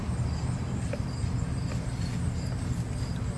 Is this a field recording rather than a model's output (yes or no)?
yes